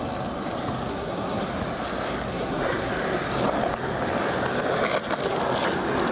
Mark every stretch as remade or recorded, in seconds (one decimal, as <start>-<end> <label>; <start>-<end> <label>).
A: 0.0-0.9 recorded; 0.9-1.5 remade; 1.5-2.3 recorded; 2.3-2.9 remade; 2.9-6.1 recorded